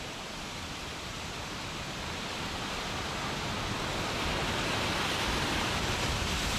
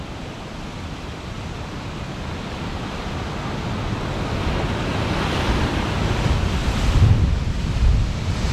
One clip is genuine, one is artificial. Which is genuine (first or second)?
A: second